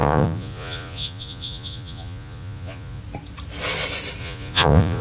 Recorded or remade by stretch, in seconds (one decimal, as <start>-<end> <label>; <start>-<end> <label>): 0.0-3.0 remade; 3.0-4.2 recorded; 4.2-5.0 remade